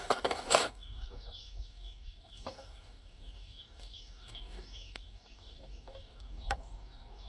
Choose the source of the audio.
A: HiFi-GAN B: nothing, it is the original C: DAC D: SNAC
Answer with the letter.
C